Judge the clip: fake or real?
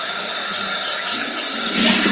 real